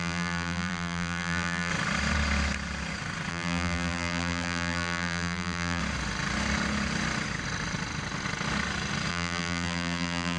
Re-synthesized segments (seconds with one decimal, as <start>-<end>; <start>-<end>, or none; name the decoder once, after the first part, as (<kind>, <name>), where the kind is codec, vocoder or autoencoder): 0.0-1.7 (vocoder, BigVGAN v2); 3.3-5.8; 9.1-10.4